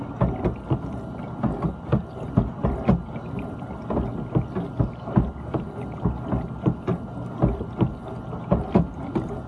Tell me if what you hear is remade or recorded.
recorded